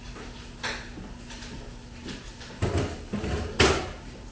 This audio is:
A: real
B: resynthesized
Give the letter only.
A